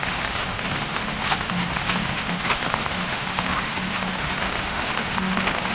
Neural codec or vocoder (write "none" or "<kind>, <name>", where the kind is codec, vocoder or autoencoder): autoencoder, DAC-VAE